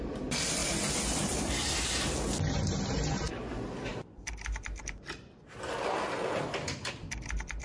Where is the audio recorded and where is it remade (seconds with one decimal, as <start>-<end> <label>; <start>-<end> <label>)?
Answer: 0.0-0.6 recorded; 0.6-1.9 remade; 1.9-7.6 recorded